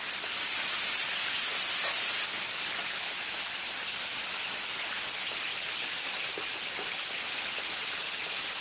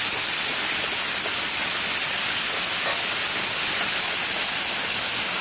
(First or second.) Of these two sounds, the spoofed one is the first